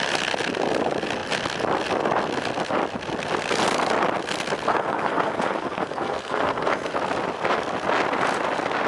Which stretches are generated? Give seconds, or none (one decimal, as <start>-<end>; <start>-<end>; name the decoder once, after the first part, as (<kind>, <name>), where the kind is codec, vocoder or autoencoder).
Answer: 4.7-6.9 (codec, SNAC)